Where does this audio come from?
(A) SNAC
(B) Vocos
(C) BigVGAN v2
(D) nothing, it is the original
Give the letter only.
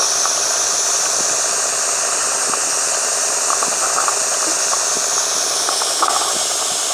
D